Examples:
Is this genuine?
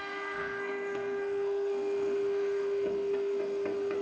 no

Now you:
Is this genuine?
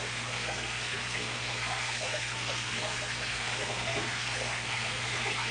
no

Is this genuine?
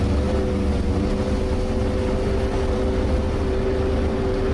yes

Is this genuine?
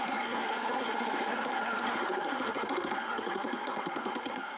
no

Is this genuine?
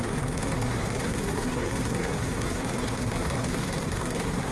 no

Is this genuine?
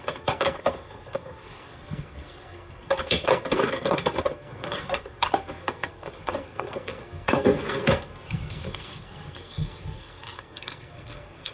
no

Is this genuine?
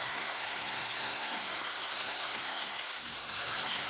no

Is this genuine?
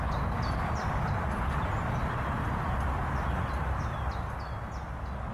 yes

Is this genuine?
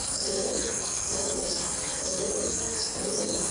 no